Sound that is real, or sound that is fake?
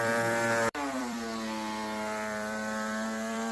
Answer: fake